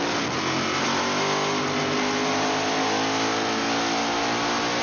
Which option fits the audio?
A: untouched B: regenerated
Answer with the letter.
A